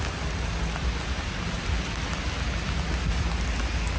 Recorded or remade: recorded